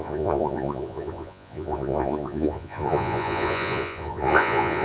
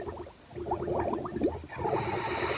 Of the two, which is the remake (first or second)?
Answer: first